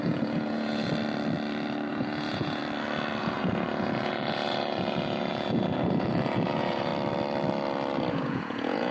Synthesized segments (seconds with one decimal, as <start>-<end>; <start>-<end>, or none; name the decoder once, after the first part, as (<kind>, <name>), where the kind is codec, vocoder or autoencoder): 0.0-0.9 (vocoder, Vocos); 1.9-2.6; 3.2-6.9; 8.1-8.9